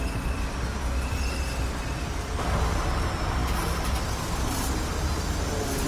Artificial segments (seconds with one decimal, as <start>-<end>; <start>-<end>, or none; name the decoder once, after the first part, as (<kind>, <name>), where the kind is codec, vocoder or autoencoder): none